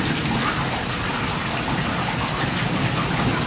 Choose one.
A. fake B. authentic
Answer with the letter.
B